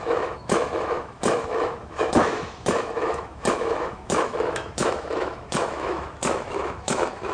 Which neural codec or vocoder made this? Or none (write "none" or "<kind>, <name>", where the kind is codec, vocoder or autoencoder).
autoencoder, DAC-VAE